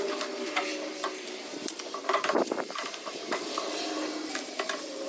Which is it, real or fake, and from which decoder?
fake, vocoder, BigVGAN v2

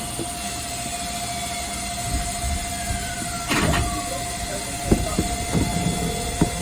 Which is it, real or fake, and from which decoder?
real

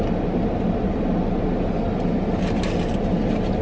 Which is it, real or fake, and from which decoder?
real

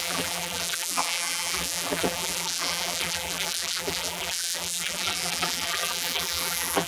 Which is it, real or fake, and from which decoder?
fake, vocoder, BigVGAN v2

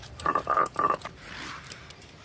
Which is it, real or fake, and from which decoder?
fake, vocoder, BigVGAN v2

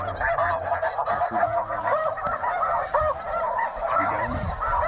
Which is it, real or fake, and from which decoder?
fake, vocoder, BigVGAN v2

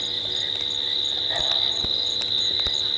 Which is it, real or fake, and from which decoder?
real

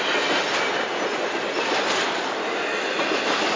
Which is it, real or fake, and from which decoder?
real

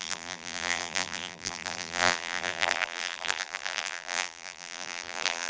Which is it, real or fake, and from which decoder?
fake, vocoder, BigVGAN v2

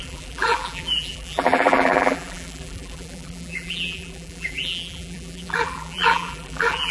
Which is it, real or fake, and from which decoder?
fake, vocoder, BigVGAN v2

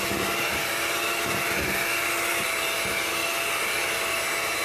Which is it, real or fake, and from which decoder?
real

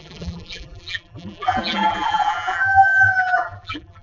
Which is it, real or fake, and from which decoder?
fake, vocoder, BigVGAN v2